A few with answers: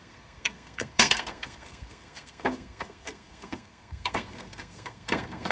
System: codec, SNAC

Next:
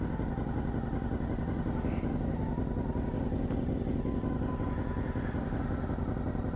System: none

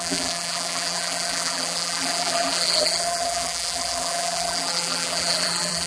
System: vocoder, BigVGAN v2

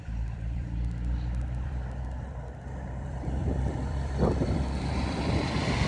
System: vocoder, BigVGAN v2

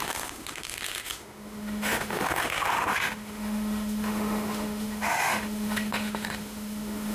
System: autoencoder, DAC-VAE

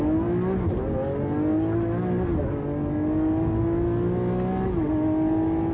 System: none